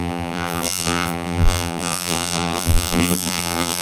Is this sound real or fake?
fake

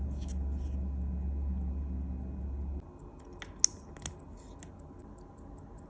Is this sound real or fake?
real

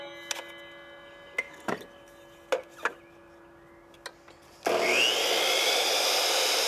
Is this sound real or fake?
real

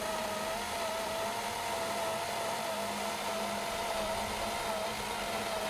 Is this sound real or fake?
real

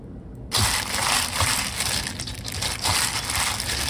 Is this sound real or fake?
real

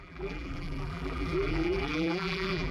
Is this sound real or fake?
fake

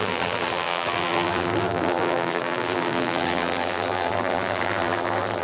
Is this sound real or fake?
fake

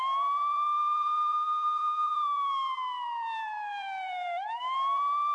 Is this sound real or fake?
fake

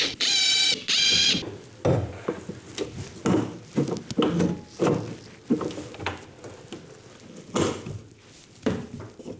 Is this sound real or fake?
real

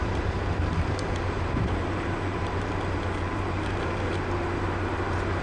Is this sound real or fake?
fake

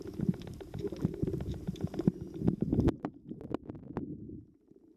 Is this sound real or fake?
real